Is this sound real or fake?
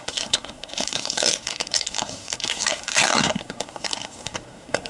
fake